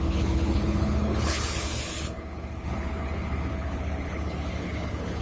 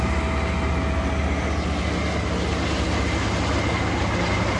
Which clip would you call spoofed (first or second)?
first